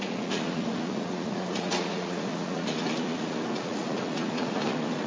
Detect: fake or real fake